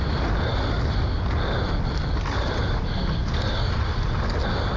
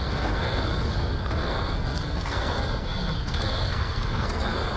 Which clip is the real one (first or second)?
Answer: first